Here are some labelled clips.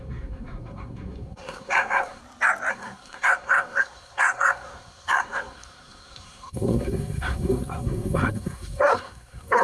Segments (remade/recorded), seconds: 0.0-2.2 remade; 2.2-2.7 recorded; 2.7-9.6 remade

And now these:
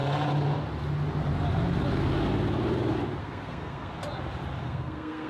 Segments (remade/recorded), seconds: 0.0-3.2 recorded; 3.2-3.9 remade; 3.9-4.6 recorded; 4.6-5.3 remade

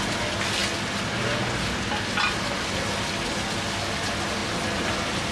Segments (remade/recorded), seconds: 0.0-5.3 recorded

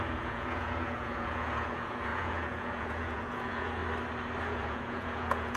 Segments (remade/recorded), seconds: 0.0-3.8 remade; 3.8-4.4 recorded; 4.4-5.6 remade

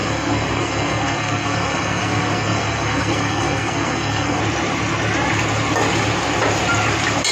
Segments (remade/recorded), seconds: 0.0-4.4 remade; 4.4-7.3 recorded

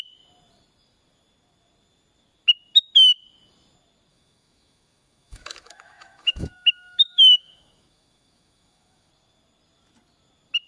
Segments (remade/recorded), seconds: 0.0-4.1 recorded; 4.1-9.1 remade; 9.1-10.7 recorded